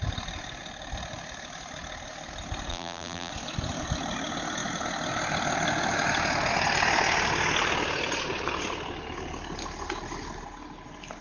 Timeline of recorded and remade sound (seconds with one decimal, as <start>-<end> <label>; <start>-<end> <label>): 0.0-2.7 recorded; 2.7-3.3 remade; 3.3-11.2 recorded